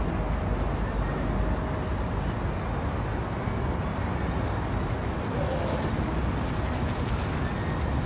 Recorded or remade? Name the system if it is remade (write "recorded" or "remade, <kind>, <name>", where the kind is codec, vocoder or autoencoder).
recorded